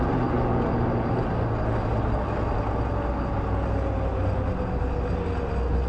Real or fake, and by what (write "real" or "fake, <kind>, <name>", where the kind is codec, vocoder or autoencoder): real